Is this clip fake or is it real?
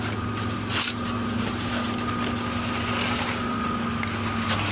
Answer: real